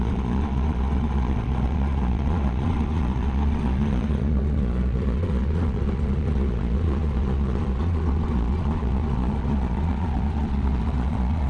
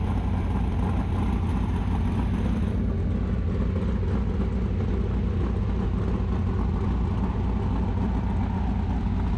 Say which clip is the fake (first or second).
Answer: first